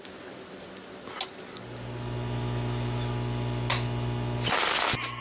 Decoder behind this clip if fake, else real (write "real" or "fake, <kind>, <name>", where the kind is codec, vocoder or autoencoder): real